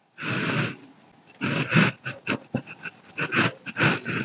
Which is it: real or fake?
real